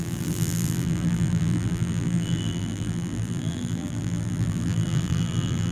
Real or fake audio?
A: fake